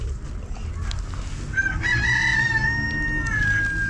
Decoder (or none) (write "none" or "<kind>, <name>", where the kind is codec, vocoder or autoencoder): none